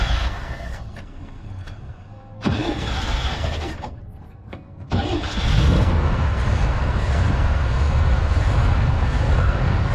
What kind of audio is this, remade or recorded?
remade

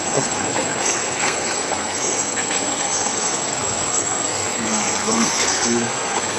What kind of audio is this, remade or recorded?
remade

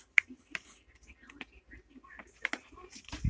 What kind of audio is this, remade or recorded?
recorded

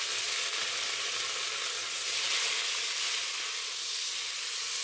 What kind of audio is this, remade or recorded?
recorded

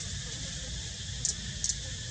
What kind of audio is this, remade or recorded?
recorded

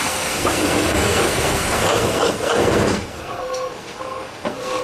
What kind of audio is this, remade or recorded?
remade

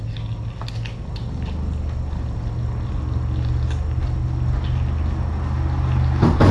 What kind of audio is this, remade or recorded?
recorded